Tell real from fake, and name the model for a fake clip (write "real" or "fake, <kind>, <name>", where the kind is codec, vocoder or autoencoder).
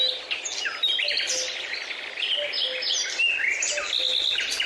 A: real